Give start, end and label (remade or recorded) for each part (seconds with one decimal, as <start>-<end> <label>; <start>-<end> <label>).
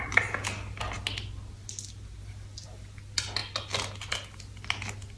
0.0-5.2 recorded